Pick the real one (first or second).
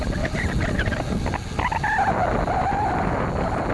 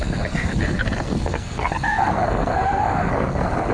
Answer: first